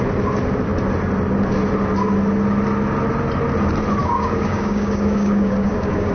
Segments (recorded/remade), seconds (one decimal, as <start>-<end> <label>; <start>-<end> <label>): 0.0-4.0 recorded; 4.0-6.1 remade